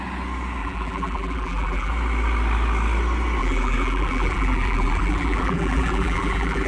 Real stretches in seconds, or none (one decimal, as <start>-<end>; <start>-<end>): 0.0-0.6; 1.9-3.4